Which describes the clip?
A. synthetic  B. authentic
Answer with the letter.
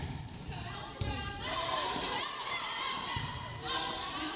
A